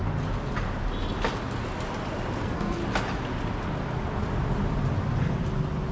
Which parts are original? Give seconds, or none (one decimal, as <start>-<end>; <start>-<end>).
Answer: 0.0-2.4; 2.8-5.9